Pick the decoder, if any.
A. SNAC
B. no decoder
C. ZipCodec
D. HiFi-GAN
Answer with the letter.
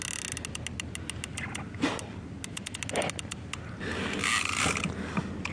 B